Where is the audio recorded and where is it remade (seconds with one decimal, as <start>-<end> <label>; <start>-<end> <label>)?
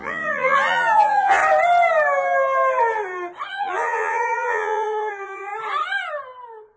0.0-1.4 remade; 1.4-3.5 recorded; 3.5-5.5 remade; 5.5-6.8 recorded